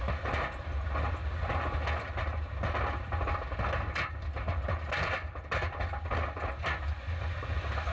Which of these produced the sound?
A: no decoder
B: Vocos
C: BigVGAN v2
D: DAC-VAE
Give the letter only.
A